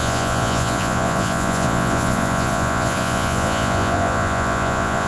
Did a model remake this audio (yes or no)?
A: yes